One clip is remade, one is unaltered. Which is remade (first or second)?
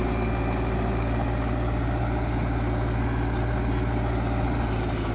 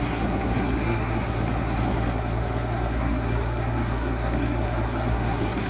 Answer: second